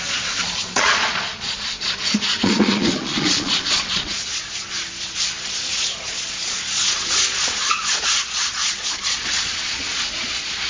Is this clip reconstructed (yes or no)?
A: yes